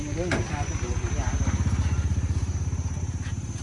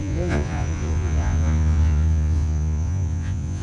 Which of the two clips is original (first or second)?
first